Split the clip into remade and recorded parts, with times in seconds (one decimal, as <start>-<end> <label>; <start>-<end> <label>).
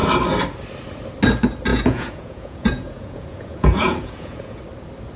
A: 0.0-1.7 recorded; 1.7-4.6 remade; 4.6-5.2 recorded